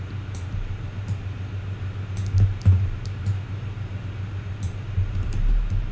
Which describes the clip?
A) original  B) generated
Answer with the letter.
B